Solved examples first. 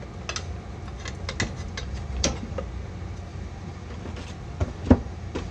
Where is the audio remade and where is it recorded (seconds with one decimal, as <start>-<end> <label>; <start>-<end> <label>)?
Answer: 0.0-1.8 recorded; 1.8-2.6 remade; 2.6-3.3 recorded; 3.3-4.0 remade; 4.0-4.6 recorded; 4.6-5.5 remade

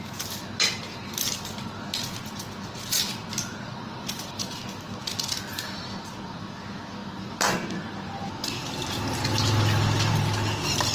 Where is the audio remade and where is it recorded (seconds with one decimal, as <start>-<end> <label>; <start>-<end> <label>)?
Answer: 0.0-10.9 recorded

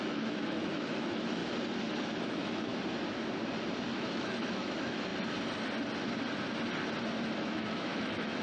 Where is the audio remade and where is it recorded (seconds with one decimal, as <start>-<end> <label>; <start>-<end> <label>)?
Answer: 0.0-1.4 remade; 1.4-2.0 recorded; 2.0-2.7 remade; 2.7-3.9 recorded; 3.9-5.1 remade; 5.1-7.3 recorded; 7.3-8.4 remade

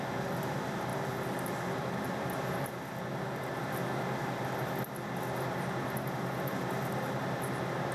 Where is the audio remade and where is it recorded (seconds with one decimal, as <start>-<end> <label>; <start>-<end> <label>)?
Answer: 0.0-7.9 recorded

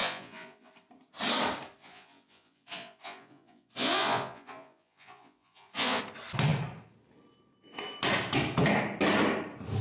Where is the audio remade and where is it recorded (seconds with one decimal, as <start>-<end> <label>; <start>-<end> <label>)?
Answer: 0.0-0.7 remade; 0.7-1.8 recorded; 1.8-6.0 remade; 6.0-9.8 recorded

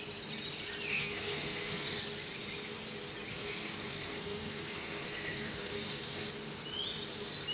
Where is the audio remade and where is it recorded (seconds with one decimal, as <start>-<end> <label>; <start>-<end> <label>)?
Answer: 0.0-0.9 recorded; 0.9-2.0 remade; 2.0-3.3 recorded; 3.3-6.3 remade; 6.3-7.5 recorded